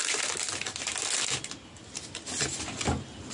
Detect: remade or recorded recorded